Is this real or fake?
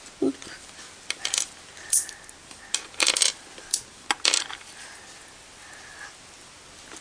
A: real